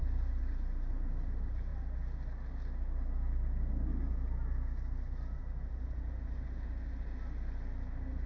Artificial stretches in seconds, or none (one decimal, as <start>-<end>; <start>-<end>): none